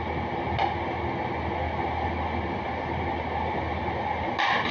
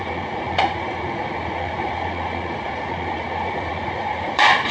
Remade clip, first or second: second